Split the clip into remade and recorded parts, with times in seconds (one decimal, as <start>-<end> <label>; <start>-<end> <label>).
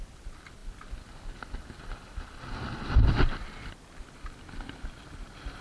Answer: 0.0-5.6 recorded